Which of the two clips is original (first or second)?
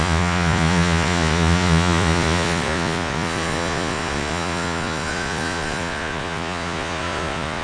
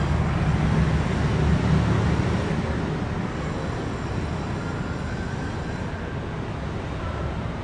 second